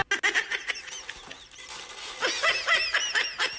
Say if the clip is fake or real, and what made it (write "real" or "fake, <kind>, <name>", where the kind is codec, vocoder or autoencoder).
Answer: real